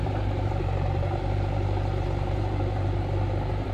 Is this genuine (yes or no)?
no